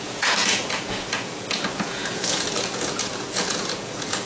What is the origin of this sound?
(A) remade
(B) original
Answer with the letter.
A